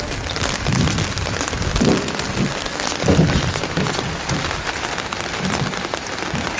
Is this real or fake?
real